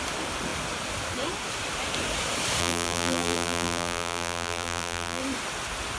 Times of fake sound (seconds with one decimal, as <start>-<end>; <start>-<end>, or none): 2.6-5.2